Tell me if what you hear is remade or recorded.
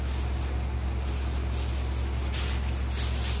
recorded